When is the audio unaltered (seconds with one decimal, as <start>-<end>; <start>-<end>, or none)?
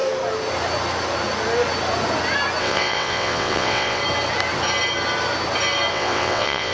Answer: 0.0-2.6; 4.0-5.9